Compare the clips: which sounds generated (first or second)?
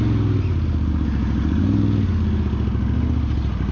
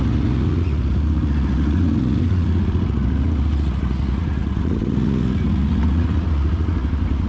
second